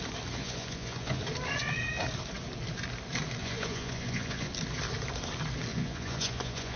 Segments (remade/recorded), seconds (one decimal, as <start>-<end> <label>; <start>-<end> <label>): 0.0-0.4 recorded; 0.4-1.2 remade; 1.2-3.4 recorded; 3.4-4.5 remade; 4.5-5.7 recorded; 5.7-6.8 remade